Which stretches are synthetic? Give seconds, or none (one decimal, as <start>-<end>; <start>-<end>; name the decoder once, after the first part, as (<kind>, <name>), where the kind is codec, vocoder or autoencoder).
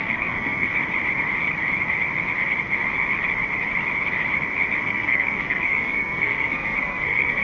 0.0-0.7 (codec, SNAC); 4.8-7.4